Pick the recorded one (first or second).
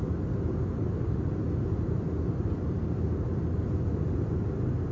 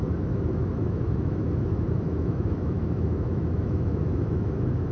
first